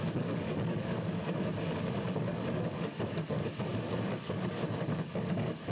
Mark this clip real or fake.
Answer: fake